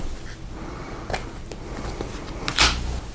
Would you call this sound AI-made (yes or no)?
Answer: no